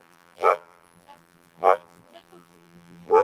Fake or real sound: fake